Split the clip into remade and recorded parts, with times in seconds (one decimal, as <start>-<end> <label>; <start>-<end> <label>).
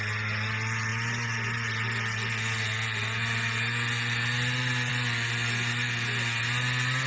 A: 0.0-7.1 recorded